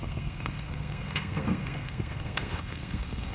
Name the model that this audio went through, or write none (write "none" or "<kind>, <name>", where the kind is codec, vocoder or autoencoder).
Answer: codec, SNAC